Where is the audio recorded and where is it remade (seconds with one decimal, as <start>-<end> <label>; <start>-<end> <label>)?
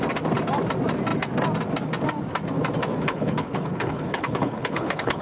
0.0-3.0 recorded; 3.0-5.2 remade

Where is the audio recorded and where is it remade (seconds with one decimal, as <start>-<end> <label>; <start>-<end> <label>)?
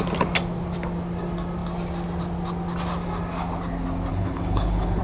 0.0-4.1 recorded; 4.1-5.0 remade